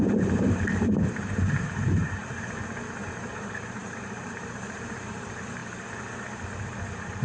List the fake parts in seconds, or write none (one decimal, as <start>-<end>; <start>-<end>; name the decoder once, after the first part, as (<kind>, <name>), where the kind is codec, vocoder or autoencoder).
0.0-2.2 (vocoder, BigVGAN v2); 3.3-5.6

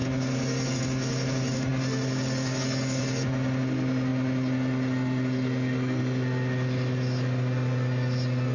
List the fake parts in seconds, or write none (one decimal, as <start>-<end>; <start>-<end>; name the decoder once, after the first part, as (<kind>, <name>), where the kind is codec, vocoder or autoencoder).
none

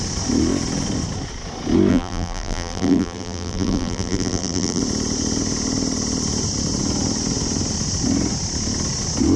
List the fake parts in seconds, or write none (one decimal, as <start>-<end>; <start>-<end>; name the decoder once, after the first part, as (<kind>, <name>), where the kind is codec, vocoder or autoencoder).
1.9-4.8 (vocoder, BigVGAN v2)

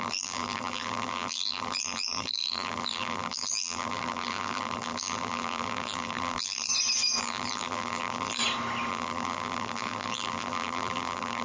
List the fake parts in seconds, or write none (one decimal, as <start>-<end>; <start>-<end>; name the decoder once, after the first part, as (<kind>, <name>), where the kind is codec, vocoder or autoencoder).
0.0-6.7 (vocoder, BigVGAN v2); 7.2-8.4; 8.9-11.4

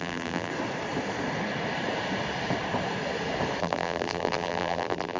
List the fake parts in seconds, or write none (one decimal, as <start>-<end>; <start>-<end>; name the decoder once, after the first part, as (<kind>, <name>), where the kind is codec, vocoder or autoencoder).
0.0-0.5 (vocoder, BigVGAN v2); 3.6-5.2

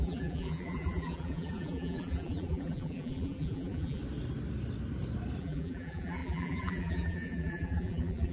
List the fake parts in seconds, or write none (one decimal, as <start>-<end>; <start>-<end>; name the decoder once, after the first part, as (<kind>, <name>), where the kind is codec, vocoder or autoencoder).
0.0-4.0 (vocoder, BigVGAN v2); 5.4-8.3